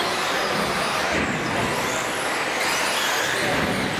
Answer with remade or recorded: recorded